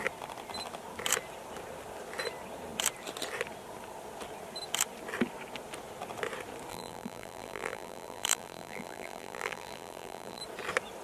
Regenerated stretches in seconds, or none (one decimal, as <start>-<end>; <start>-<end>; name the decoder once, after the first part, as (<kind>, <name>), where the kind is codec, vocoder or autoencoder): 6.7-10.4 (vocoder, BigVGAN v2)